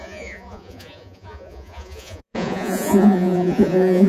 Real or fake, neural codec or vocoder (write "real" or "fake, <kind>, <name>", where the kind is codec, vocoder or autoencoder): fake, vocoder, Vocos